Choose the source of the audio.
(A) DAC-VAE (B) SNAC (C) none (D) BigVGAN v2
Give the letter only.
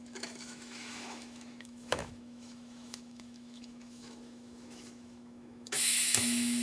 A